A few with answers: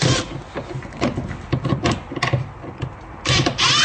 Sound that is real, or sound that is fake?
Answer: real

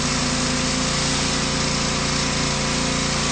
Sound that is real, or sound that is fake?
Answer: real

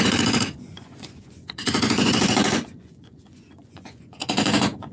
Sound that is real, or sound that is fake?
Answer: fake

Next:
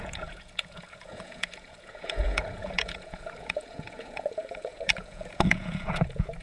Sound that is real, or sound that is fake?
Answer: fake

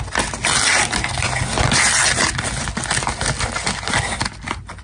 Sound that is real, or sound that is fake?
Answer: real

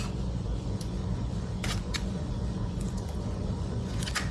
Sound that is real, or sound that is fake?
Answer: fake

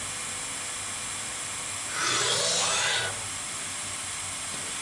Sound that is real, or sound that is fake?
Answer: real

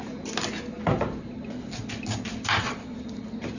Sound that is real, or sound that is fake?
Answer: real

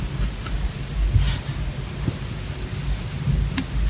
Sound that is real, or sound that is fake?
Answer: real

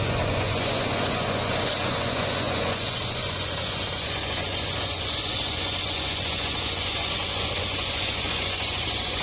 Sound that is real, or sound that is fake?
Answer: fake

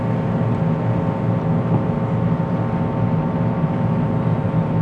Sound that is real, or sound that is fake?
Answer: real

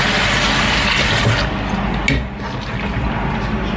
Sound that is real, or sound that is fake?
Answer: real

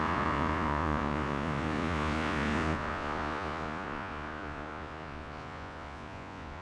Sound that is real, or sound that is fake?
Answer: fake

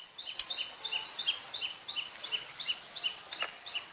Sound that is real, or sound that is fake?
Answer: real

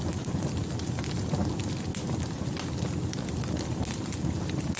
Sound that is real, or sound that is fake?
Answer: real